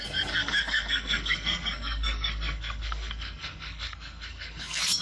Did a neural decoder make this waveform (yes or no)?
yes